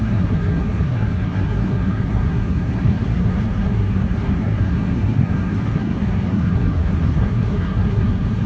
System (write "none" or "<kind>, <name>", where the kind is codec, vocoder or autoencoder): codec, SNAC